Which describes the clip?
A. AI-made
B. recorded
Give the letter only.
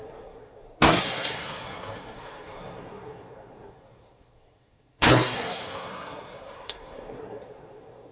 A